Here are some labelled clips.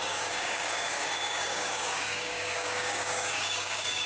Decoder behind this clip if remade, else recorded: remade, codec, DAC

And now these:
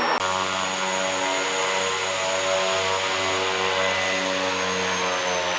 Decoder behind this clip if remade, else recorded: recorded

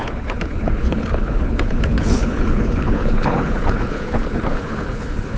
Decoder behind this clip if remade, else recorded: remade, codec, HILCodec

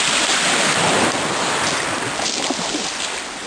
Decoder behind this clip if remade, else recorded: recorded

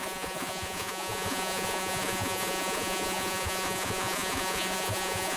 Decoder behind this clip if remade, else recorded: remade, vocoder, Vocos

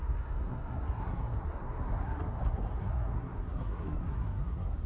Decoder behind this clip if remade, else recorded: remade, codec, SNAC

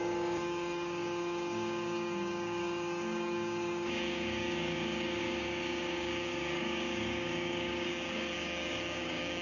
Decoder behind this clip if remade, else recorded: remade, codec, DAC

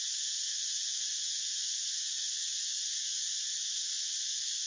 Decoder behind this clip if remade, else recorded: remade, autoencoder, DAC-VAE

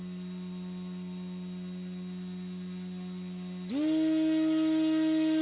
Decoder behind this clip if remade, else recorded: recorded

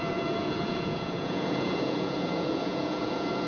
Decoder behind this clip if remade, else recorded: remade, vocoder, Vocos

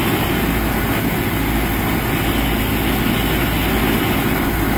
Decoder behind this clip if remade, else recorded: recorded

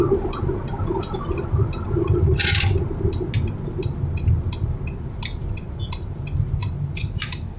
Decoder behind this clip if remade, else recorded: recorded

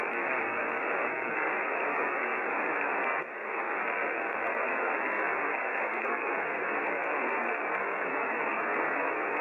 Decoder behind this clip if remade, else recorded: remade, codec, SNAC